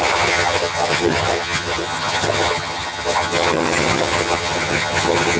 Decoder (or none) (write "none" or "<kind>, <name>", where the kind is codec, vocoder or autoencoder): vocoder, HiFi-GAN